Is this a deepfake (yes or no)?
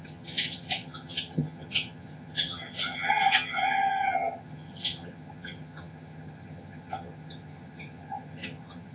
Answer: yes